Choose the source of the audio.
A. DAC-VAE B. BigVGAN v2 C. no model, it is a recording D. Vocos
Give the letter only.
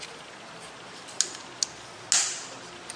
C